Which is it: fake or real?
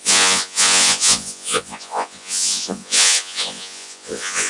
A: fake